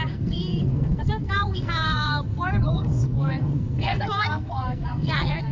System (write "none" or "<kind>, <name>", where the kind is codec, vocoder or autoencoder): codec, SNAC